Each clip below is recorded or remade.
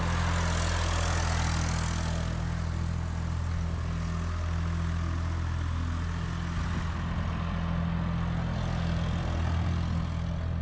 recorded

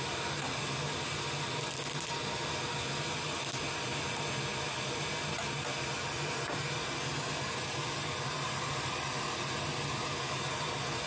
recorded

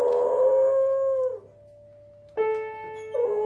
recorded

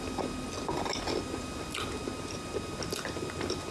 recorded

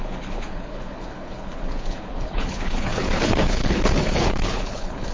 remade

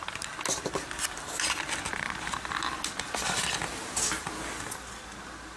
recorded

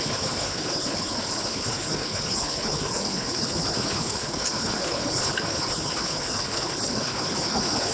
remade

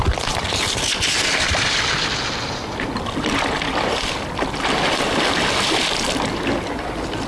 recorded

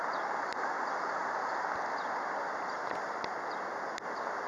recorded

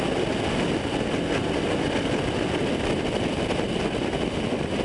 recorded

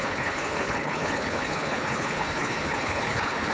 remade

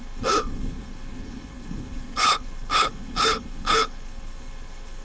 remade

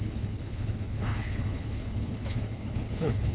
remade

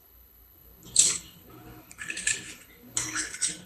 remade